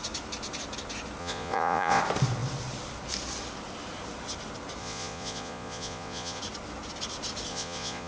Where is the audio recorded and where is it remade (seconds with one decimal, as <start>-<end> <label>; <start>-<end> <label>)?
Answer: 0.0-1.2 recorded; 1.2-2.0 remade; 2.0-4.8 recorded; 4.8-6.4 remade; 6.4-7.5 recorded; 7.5-8.1 remade